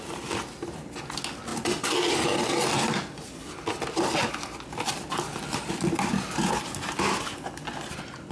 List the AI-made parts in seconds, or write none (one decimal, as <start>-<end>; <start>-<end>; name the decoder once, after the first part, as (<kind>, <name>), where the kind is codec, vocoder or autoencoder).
none